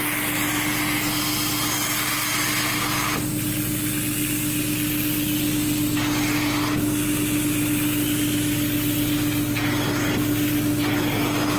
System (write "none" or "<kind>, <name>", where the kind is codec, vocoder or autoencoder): none